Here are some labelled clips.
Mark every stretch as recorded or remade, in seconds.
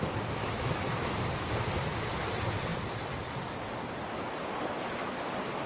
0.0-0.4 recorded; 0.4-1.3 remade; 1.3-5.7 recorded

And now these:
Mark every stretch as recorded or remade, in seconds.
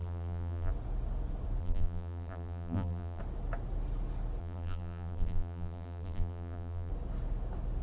0.0-0.7 remade; 0.7-1.6 recorded; 1.6-3.2 remade; 3.2-4.4 recorded; 4.4-6.9 remade; 6.9-7.8 recorded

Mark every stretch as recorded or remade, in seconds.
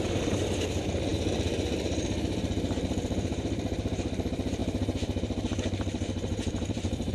0.0-7.1 remade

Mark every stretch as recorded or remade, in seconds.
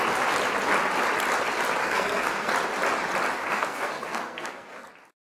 0.0-1.8 recorded; 1.8-2.5 remade; 2.5-3.4 recorded; 3.4-4.9 remade; 4.9-5.4 recorded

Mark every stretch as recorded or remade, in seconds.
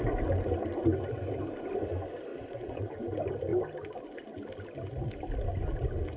0.0-2.3 recorded; 2.3-2.9 remade; 2.9-6.2 recorded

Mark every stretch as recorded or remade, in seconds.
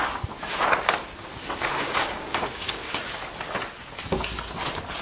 0.0-1.3 recorded; 1.3-3.0 remade; 3.0-5.0 recorded